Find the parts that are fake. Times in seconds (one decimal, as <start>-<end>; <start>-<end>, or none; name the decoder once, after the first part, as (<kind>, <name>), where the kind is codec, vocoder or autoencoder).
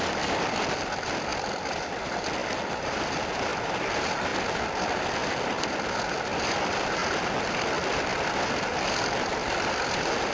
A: 0.0-4.3 (vocoder, BigVGAN v2); 6.4-7.0; 8.7-10.3